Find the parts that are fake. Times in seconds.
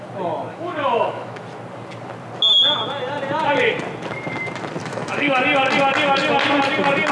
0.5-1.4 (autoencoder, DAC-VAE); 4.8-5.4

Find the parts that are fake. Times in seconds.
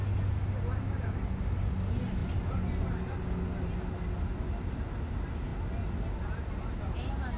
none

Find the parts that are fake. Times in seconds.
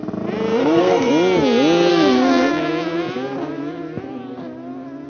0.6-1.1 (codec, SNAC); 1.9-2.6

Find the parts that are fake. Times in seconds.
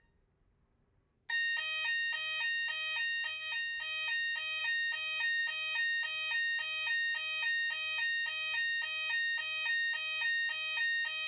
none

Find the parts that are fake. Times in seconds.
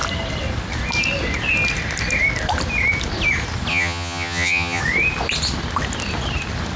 3.7-4.8 (vocoder, HiFi-GAN)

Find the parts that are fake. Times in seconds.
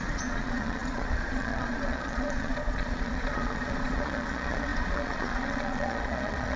0.0-6.6 (vocoder, Vocos)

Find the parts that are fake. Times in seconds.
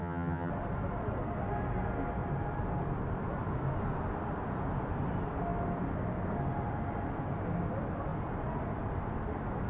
0.0-0.5 (vocoder, HiFi-GAN)